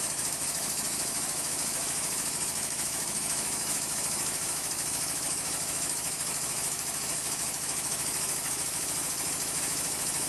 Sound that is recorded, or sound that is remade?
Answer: remade